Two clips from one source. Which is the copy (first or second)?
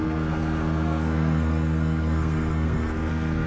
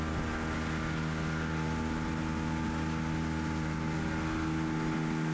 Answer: first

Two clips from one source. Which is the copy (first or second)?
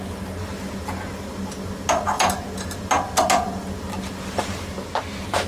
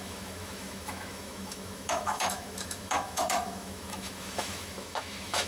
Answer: second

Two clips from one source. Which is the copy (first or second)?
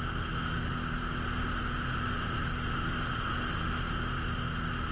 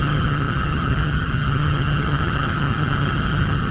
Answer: second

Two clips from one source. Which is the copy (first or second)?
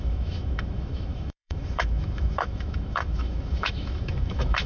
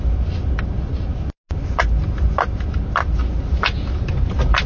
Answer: first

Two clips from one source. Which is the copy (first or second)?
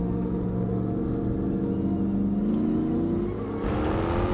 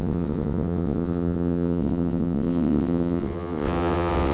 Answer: second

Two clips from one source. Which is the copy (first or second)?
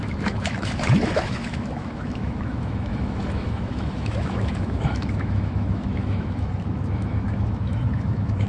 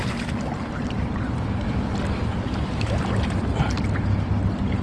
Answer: first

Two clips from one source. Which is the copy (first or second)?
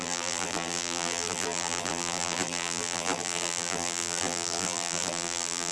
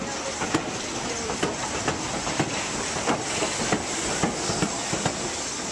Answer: first